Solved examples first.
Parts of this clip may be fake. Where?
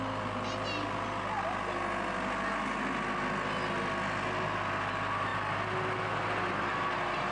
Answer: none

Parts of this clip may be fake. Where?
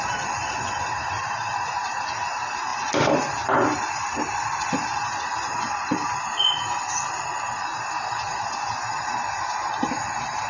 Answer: 8.3-9.1 (vocoder, BigVGAN v2)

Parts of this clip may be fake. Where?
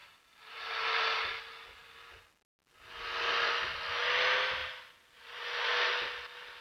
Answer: 0.0-1.4 (vocoder, BigVGAN v2); 4.6-5.7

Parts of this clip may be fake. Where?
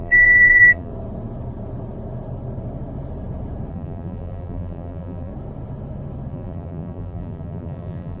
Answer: 0.0-0.9 (vocoder, BigVGAN v2); 3.7-5.3; 6.3-8.2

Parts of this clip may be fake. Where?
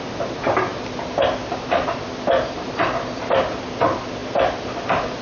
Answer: 4.2-5.2 (vocoder, BigVGAN v2)